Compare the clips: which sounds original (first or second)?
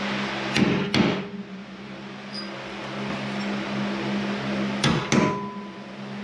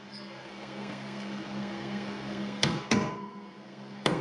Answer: first